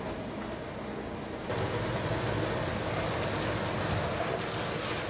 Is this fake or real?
real